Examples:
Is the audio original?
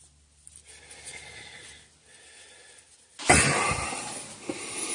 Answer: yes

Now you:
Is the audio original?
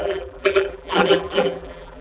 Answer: no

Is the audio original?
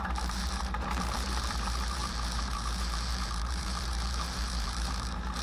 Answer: no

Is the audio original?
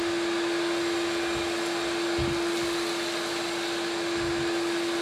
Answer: yes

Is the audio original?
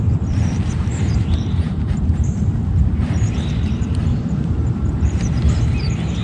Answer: no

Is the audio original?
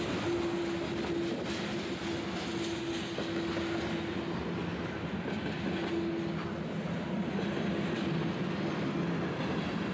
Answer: yes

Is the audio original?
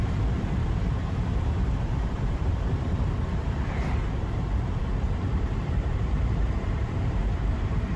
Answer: no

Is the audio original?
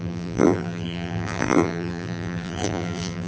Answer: no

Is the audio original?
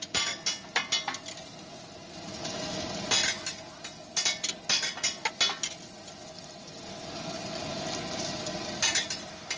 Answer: yes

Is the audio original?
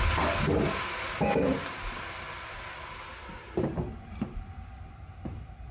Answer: yes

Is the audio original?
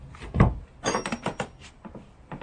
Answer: yes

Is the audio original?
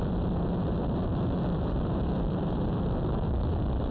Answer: no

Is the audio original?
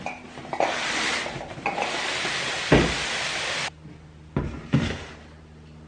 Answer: yes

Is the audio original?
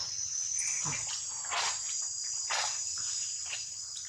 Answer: yes